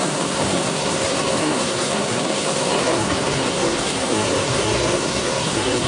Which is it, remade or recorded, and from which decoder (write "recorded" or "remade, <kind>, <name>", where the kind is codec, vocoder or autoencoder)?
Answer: remade, codec, SNAC